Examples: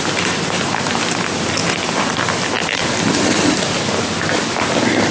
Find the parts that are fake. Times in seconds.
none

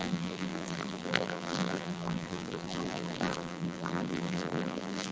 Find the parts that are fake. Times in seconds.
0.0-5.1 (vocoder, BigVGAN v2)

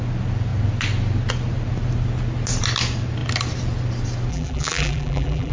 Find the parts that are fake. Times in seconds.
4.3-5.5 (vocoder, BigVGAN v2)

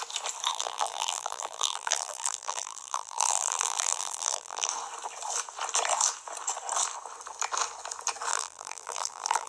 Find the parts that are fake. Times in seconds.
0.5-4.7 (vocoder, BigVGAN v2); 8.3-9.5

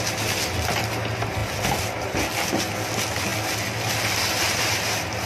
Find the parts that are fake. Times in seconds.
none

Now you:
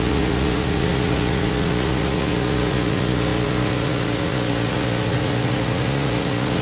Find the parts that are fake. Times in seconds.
0.0-6.6 (vocoder, Vocos)

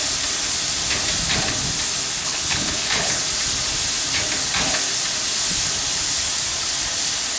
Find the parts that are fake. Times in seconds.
2.2-3.2 (codec, HILCodec)